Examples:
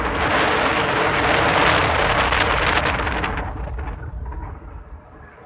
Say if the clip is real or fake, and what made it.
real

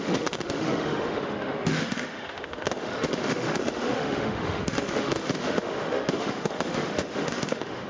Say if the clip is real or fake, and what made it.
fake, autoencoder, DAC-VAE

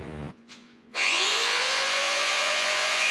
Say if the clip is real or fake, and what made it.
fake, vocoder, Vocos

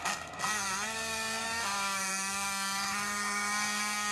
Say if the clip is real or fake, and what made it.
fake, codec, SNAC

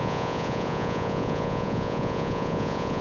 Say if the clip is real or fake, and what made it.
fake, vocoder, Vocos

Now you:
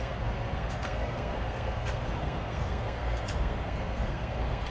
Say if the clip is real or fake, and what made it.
fake, codec, SNAC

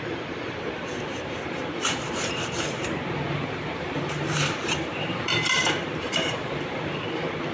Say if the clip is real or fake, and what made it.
fake, vocoder, BigVGAN v2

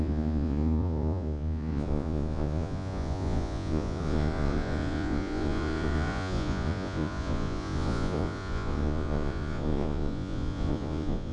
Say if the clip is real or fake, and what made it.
fake, vocoder, Vocos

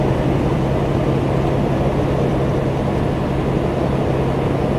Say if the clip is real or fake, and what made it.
real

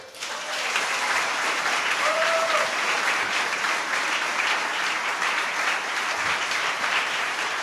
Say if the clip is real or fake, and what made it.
fake, vocoder, BigVGAN v2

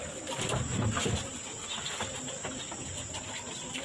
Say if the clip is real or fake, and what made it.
real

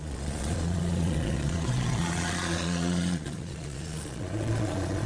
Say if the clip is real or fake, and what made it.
fake, vocoder, Vocos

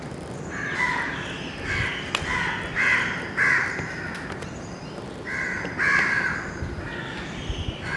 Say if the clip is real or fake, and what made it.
real